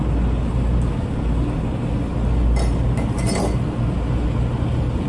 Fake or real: real